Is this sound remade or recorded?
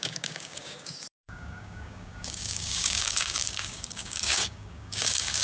remade